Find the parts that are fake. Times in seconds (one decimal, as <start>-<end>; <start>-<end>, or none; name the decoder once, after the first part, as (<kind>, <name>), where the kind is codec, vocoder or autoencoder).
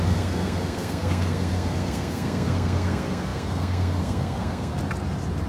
0.0-4.7 (codec, SNAC)